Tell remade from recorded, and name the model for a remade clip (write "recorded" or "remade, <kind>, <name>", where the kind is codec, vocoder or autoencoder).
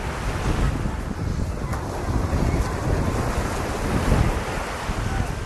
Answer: recorded